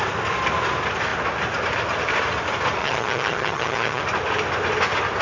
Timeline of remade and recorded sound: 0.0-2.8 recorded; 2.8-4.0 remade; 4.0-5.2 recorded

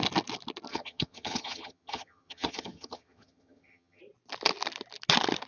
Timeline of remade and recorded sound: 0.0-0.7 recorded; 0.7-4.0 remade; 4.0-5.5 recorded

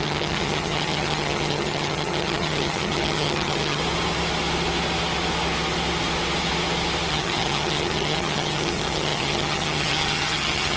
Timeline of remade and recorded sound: 0.0-3.8 remade; 3.8-7.1 recorded; 7.1-10.8 remade

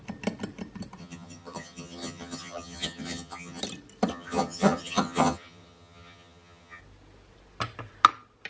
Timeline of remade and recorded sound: 0.0-1.0 recorded; 1.0-3.6 remade; 3.6-4.1 recorded; 4.1-6.8 remade; 6.8-8.5 recorded

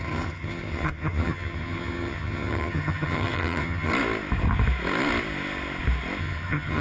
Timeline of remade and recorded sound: 0.0-3.9 remade; 3.9-6.2 recorded; 6.2-6.8 remade